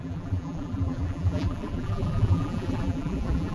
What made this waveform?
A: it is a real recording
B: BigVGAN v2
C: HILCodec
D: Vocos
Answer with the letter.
B